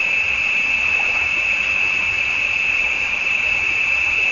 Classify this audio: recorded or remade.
recorded